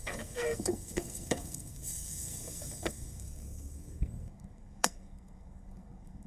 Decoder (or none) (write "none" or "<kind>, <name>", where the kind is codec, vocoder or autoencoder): codec, SNAC